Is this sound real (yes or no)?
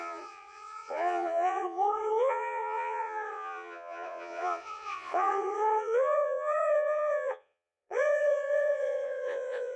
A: no